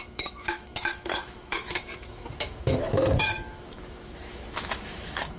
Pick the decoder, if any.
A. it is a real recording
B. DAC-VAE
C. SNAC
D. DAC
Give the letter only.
B